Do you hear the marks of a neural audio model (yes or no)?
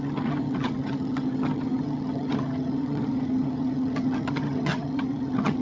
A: yes